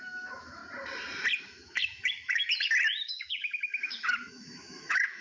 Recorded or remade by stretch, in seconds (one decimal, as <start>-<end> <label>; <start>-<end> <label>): 0.0-0.6 remade; 0.6-1.4 recorded; 1.4-2.4 remade; 2.4-3.0 recorded; 3.0-5.2 remade

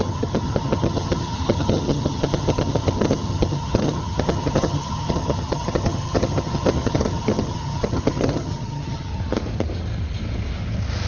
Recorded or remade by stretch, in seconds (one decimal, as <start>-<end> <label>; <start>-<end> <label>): 0.0-9.1 remade; 9.1-11.1 recorded